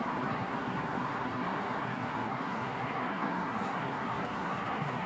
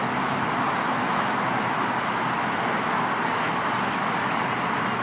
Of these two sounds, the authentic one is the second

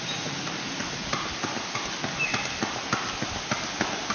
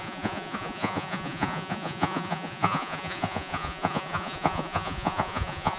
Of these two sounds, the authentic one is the first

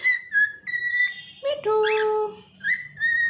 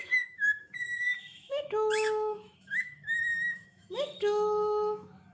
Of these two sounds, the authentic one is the first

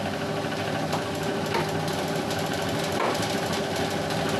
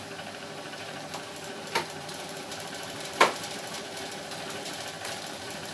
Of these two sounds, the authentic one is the first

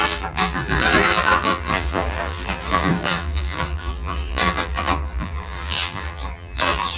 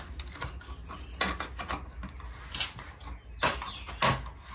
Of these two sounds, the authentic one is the second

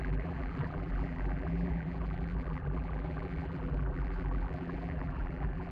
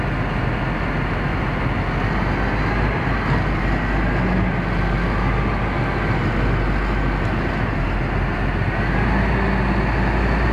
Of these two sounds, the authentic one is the second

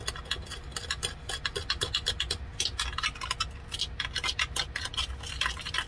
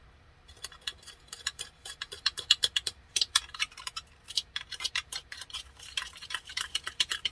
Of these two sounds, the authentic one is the first